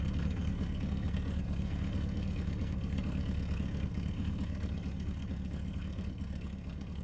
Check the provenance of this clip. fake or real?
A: fake